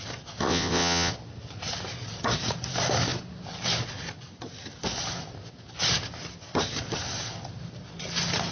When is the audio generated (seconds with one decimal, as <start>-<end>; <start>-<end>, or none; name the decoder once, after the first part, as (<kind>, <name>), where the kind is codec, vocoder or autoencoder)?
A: 0.4-1.1 (vocoder, WaveNeXt)